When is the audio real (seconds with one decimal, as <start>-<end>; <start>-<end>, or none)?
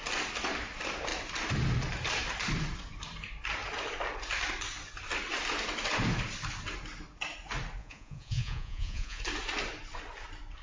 0.0-7.8; 9.2-10.6